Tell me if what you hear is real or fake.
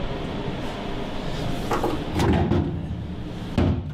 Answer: real